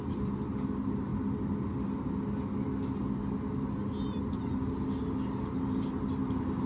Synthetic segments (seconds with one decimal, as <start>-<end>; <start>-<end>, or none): none